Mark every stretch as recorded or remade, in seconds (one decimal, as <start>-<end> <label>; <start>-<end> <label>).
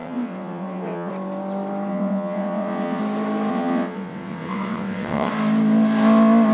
0.0-1.1 remade; 1.1-1.9 recorded; 1.9-3.0 remade; 3.0-3.5 recorded; 3.5-5.3 remade; 5.3-6.5 recorded